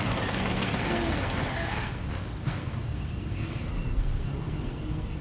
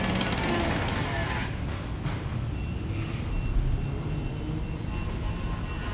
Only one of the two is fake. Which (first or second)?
first